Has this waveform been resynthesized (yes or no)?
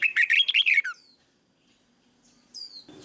no